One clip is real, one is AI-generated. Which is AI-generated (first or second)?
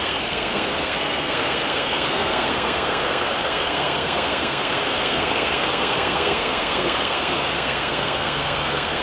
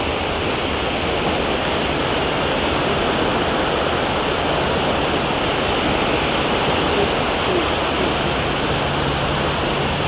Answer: first